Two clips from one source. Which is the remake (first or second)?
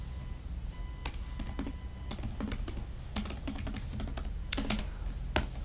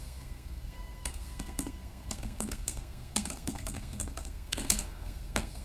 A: second